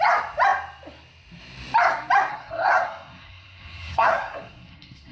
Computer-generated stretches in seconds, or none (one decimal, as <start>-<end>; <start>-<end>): 2.3-5.1